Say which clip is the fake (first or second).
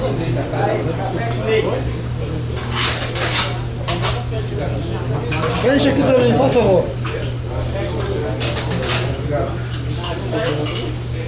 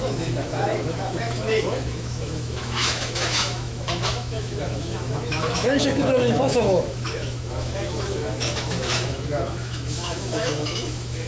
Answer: second